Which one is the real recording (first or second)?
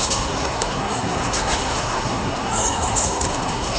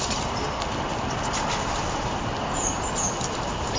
second